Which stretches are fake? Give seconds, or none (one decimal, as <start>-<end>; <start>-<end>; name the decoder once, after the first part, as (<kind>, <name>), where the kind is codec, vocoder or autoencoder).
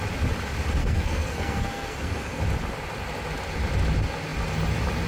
0.8-2.4 (codec, SNAC)